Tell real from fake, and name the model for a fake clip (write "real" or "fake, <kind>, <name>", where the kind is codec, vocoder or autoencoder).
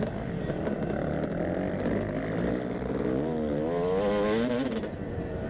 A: real